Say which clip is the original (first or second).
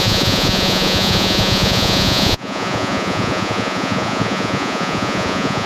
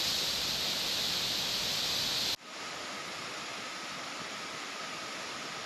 second